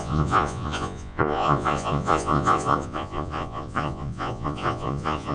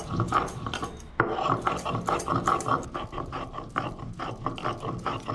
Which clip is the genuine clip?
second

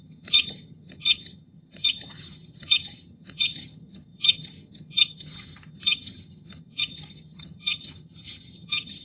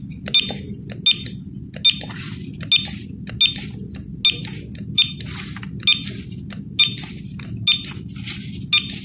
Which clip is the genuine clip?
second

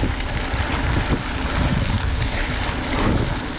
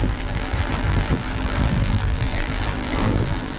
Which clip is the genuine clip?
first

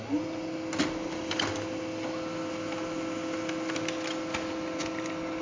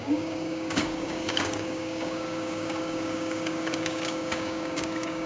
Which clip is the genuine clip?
first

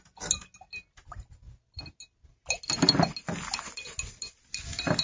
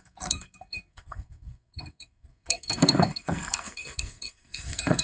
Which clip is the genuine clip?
first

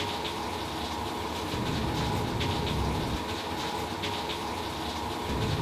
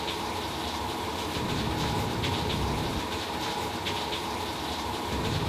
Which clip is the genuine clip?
first